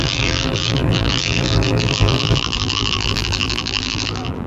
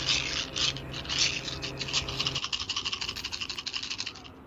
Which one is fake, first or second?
first